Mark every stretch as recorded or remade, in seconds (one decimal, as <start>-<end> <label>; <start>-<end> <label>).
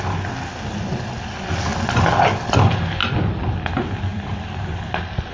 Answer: 0.0-4.1 recorded; 4.1-4.7 remade; 4.7-5.3 recorded